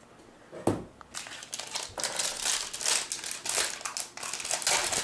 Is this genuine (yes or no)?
yes